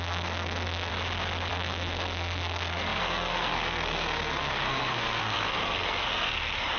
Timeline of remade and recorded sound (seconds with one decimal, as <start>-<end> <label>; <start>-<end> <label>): 0.0-0.9 remade; 0.9-1.5 recorded; 1.5-6.8 remade